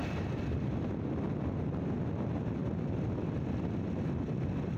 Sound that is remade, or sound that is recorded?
recorded